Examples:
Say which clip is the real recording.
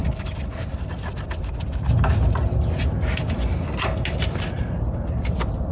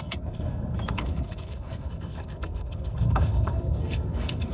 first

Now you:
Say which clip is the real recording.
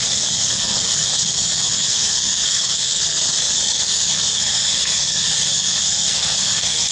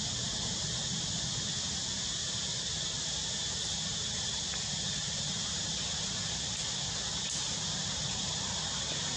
second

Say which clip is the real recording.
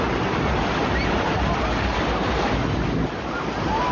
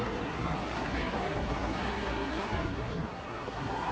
first